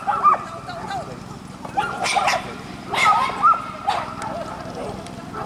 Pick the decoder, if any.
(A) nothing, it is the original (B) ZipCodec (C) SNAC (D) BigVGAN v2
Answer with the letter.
A